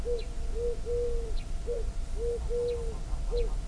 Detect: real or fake real